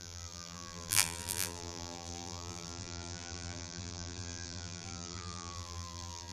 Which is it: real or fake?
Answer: fake